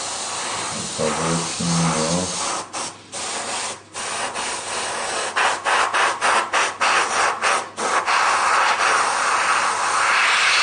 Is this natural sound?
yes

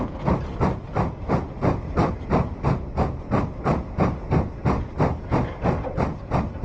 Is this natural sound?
yes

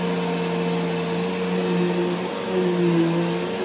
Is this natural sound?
yes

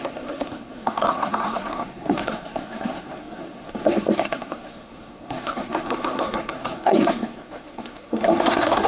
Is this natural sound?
no